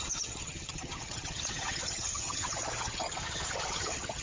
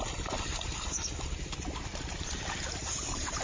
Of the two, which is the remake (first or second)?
first